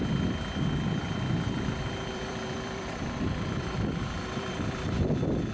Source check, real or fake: fake